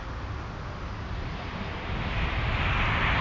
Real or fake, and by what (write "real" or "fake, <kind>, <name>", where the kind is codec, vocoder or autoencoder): real